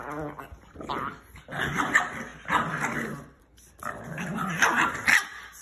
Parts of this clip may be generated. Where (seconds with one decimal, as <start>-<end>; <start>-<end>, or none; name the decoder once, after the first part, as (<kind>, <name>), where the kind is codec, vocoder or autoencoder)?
none